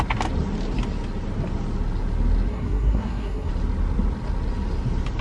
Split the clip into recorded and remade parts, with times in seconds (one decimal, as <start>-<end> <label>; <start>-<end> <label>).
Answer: 0.0-2.5 recorded; 2.5-3.5 remade; 3.5-5.2 recorded